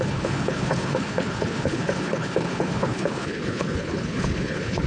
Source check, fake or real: fake